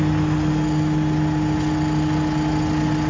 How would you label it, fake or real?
real